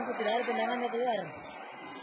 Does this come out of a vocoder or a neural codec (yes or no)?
no